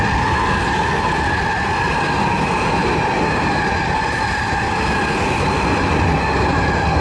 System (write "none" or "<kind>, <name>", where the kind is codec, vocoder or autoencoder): none